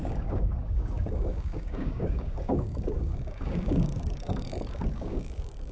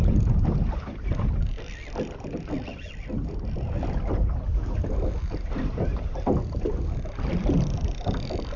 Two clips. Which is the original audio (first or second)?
second